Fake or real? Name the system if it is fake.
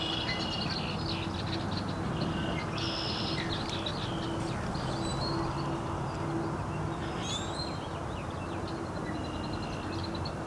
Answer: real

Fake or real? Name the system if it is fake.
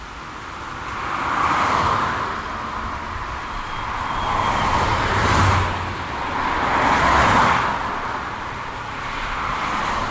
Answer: real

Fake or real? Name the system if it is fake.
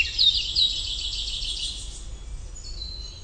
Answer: real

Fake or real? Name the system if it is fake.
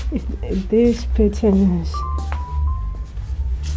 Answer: real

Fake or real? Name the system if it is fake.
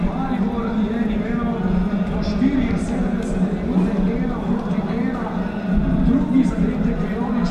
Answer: real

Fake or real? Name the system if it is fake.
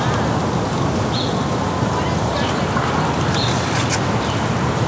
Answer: real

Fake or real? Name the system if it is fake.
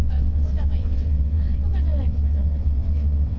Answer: fake, vocoder, WaveNeXt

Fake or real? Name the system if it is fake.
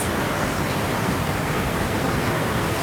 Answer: fake, codec, SNAC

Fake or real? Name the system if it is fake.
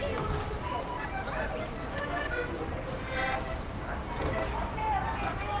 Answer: real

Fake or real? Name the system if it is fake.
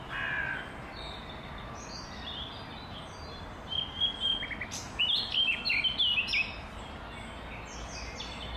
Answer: real